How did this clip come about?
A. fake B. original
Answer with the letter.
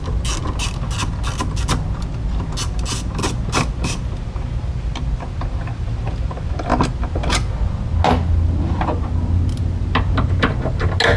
B